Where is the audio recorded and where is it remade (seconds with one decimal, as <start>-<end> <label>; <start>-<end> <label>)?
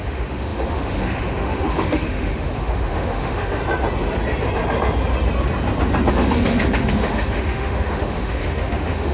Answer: 0.0-3.6 remade; 3.6-6.1 recorded; 6.1-9.1 remade